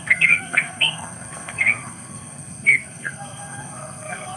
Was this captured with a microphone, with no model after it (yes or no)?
no